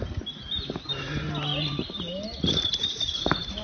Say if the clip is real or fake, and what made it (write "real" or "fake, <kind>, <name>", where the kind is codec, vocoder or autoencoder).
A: real